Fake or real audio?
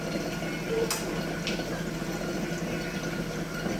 real